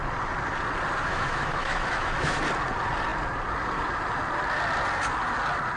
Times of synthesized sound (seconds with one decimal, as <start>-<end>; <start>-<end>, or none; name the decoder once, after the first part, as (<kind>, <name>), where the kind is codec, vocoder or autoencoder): 1.1-2.4 (autoencoder, DAC-VAE)